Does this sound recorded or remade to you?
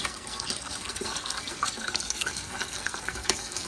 remade